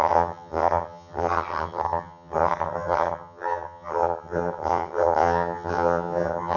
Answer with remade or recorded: remade